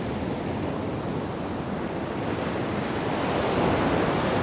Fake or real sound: real